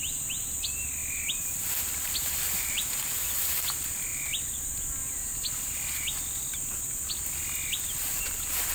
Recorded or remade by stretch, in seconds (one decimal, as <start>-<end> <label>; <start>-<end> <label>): 0.0-8.7 recorded

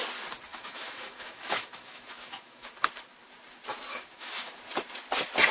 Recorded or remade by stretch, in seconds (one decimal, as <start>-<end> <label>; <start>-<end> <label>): 0.0-0.5 recorded; 0.5-2.7 remade; 2.7-3.9 recorded; 3.9-4.5 remade; 4.5-5.5 recorded

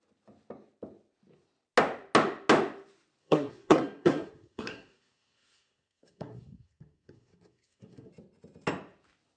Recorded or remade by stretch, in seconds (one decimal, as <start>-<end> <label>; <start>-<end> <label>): 0.0-3.2 recorded; 3.2-8.1 remade; 8.1-9.4 recorded

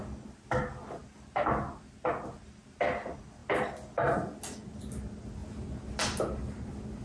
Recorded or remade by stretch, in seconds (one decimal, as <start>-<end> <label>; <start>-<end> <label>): 0.0-7.0 recorded

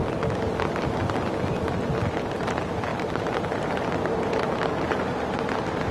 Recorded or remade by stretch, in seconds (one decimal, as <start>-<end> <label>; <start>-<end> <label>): 0.0-2.0 recorded; 2.0-5.9 remade

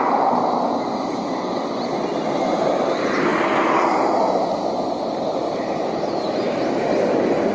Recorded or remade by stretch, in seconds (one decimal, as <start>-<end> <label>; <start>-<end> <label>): 0.0-7.5 recorded